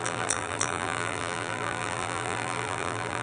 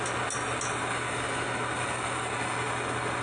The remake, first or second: first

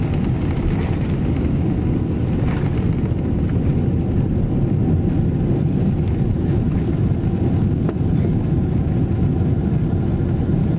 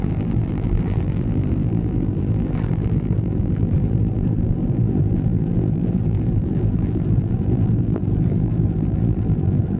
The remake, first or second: second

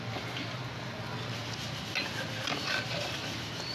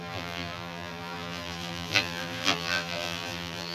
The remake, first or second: second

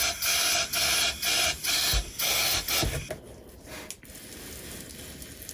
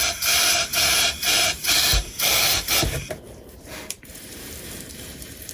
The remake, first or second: second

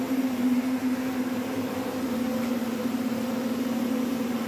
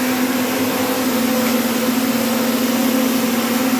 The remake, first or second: first